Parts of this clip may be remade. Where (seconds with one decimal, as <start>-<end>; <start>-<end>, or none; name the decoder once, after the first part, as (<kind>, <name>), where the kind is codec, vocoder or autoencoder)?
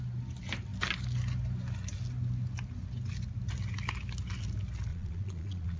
4.9-5.8 (vocoder, Vocos)